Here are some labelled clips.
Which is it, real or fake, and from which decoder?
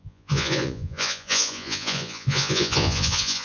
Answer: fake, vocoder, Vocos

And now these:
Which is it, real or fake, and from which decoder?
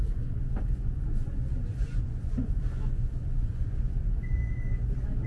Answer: fake, vocoder, Vocos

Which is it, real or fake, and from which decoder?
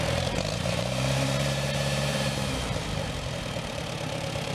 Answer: fake, vocoder, BigVGAN v2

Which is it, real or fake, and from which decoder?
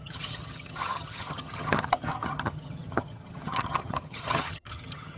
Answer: fake, vocoder, HiFi-GAN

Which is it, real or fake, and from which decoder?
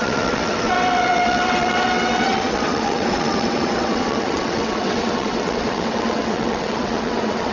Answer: fake, vocoder, WaveNeXt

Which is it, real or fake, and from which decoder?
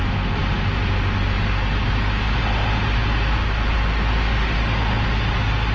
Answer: real